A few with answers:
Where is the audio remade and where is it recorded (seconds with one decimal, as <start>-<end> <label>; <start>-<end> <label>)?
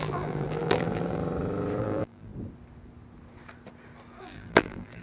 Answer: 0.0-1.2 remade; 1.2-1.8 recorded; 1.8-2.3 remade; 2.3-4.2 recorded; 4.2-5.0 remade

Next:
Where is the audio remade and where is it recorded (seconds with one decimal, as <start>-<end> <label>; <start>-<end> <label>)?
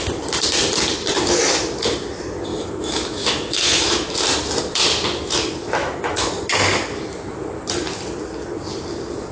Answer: 0.0-2.5 recorded; 2.5-4.1 remade; 4.1-5.8 recorded; 5.8-6.3 remade; 6.3-9.3 recorded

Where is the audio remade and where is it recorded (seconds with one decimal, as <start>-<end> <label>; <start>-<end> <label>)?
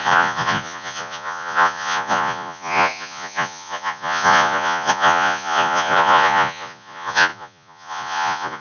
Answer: 0.0-8.6 remade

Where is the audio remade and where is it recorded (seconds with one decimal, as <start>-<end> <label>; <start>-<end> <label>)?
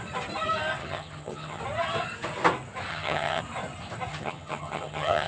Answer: 0.0-0.8 recorded; 0.8-1.6 remade; 1.6-2.9 recorded; 2.9-3.4 remade; 3.4-4.1 recorded; 4.1-5.3 remade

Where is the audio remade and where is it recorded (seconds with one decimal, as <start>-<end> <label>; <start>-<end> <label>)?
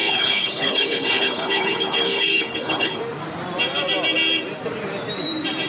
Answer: 0.0-3.0 remade; 3.0-5.7 recorded